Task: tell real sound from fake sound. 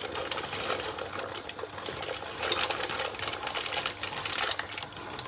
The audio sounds real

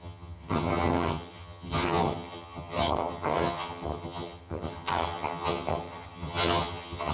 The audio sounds fake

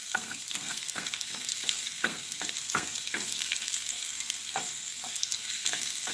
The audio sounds fake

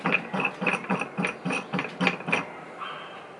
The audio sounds real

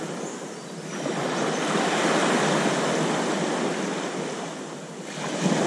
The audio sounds real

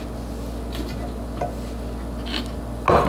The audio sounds real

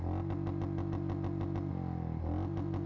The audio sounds real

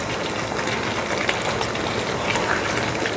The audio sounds real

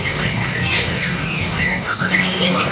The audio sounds fake